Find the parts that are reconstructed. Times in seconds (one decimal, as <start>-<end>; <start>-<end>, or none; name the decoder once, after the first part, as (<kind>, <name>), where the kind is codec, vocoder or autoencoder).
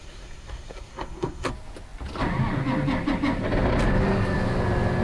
0.0-1.5 (codec, SNAC)